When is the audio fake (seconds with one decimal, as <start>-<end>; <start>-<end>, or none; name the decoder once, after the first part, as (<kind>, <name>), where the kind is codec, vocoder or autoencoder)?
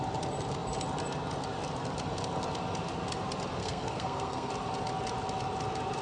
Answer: 3.6-4.5 (codec, SNAC)